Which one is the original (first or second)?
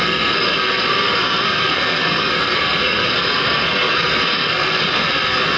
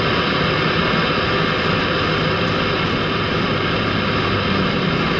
second